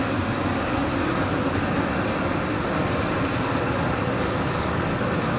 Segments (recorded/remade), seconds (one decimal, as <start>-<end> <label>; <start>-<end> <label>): 0.0-0.9 remade; 0.9-3.9 recorded; 3.9-5.4 remade